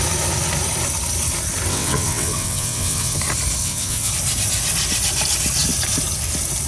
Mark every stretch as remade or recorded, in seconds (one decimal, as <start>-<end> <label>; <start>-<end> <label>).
0.0-1.7 recorded; 1.7-3.2 remade; 3.2-3.6 recorded; 3.6-4.1 remade; 4.1-6.7 recorded